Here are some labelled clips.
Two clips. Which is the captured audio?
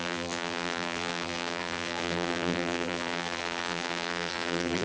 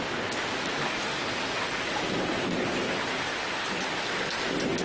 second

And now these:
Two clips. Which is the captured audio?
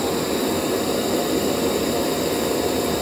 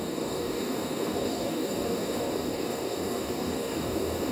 first